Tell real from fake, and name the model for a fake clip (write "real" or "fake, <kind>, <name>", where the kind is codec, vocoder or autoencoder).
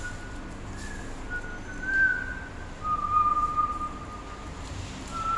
real